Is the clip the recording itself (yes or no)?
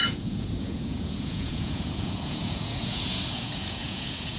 no